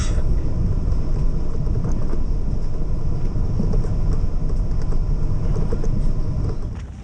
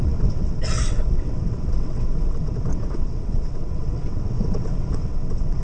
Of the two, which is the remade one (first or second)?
second